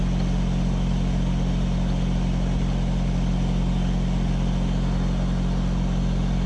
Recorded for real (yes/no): yes